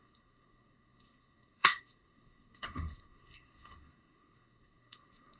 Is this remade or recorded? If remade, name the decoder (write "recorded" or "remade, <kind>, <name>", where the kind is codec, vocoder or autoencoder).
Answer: remade, codec, SNAC